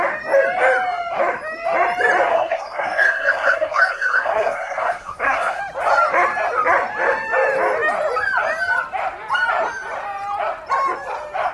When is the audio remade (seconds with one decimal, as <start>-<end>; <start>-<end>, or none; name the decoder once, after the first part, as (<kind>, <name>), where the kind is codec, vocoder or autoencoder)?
2.3-5.6 (codec, SNAC)

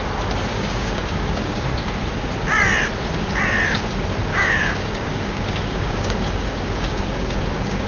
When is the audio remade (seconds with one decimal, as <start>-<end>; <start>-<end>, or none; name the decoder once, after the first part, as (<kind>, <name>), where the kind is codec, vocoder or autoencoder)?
0.5-1.7 (codec, DAC); 4.3-7.9

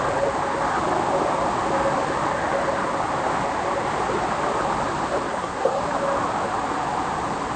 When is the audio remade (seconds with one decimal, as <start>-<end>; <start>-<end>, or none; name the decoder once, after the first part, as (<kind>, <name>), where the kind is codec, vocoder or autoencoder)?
5.3-5.8 (codec, SNAC)